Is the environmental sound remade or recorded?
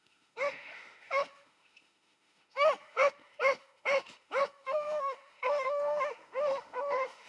remade